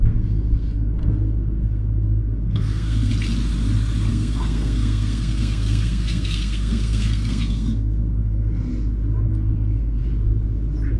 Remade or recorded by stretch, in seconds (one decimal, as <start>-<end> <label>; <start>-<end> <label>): 0.0-3.1 remade; 3.1-4.1 recorded; 4.1-8.7 remade; 8.7-9.3 recorded; 9.3-10.0 remade; 10.0-11.0 recorded